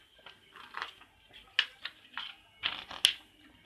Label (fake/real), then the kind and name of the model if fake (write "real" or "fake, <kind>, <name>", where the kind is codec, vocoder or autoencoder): real